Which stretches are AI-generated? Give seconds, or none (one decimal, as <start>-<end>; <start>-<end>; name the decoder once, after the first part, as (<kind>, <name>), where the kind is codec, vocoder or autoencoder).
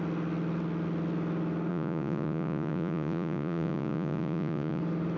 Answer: 1.7-4.8 (vocoder, Vocos)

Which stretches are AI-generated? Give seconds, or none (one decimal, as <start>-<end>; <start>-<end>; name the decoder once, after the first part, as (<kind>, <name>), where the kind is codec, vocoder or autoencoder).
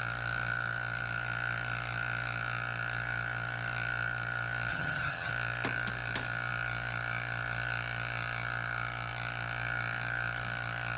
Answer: 4.7-5.3 (vocoder, HiFi-GAN)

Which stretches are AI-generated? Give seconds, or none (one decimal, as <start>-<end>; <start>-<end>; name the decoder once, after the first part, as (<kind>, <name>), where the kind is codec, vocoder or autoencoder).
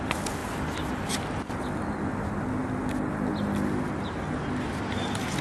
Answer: none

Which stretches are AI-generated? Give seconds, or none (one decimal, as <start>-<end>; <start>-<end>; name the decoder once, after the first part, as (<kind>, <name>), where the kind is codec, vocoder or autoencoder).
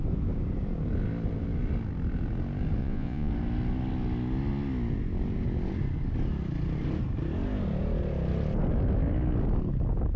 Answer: 2.8-3.3 (vocoder, Vocos)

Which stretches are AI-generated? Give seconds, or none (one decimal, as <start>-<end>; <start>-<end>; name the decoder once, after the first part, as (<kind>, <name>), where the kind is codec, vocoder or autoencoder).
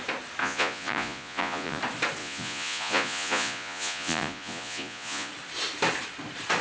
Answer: 0.4-1.8 (vocoder, Vocos); 2.2-5.3